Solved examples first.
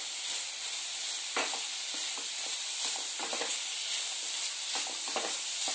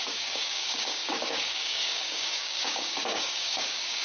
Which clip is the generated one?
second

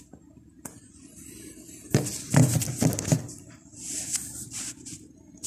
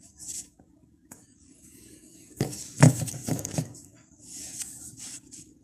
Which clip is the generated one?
second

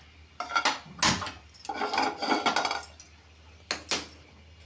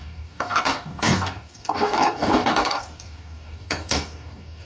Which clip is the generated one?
second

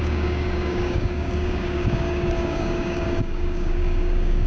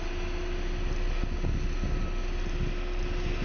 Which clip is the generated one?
first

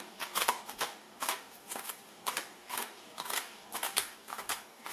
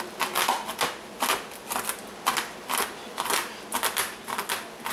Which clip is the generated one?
first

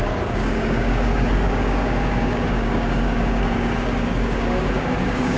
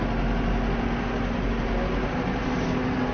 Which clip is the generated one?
first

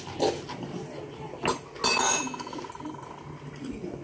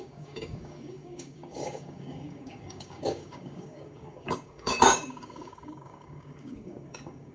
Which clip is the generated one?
second